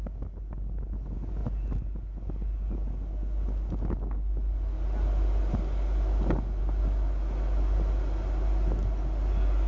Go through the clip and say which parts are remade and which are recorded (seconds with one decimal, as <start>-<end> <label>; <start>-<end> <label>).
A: 0.0-9.7 recorded